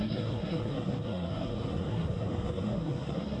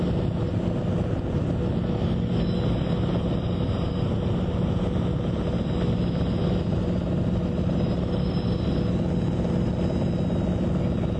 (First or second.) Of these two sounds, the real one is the second